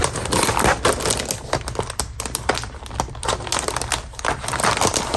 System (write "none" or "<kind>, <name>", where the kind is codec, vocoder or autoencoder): none